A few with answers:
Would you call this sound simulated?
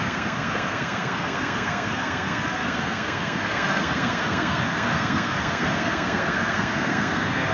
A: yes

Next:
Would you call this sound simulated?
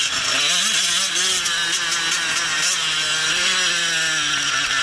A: no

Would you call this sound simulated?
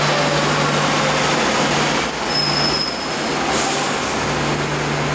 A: no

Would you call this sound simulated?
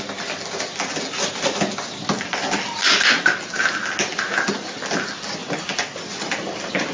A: no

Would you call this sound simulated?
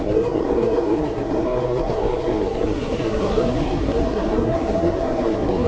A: yes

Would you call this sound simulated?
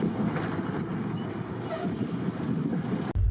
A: no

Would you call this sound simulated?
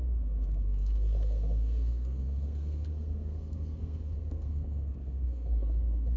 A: yes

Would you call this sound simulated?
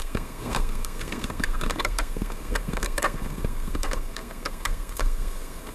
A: yes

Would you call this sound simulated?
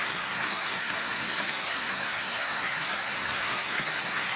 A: yes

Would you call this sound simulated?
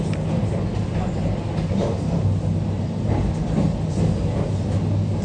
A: no